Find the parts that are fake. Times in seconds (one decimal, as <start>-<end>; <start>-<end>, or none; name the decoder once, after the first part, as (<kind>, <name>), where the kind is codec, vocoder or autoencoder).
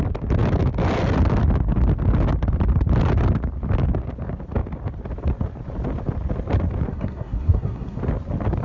6.9-8.0 (codec, SNAC)